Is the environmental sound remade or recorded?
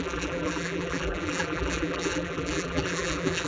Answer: remade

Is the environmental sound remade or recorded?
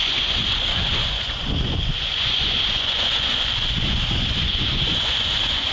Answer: remade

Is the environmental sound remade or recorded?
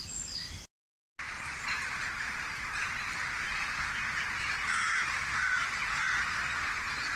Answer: recorded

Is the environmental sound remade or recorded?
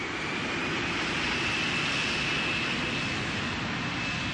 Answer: recorded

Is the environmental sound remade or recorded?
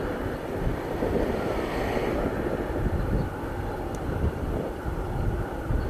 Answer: recorded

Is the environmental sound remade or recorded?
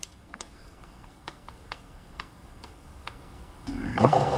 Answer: remade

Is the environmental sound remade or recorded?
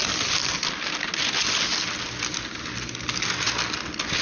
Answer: recorded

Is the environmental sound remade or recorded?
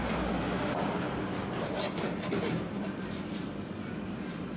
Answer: recorded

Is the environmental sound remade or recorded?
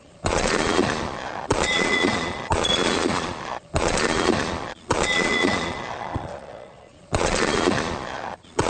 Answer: remade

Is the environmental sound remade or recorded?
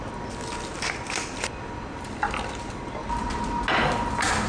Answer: recorded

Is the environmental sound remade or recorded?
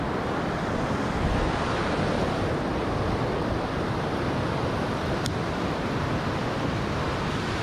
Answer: recorded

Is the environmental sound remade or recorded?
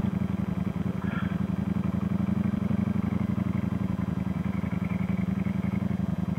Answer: recorded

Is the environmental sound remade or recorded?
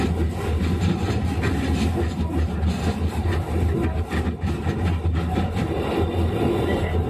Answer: recorded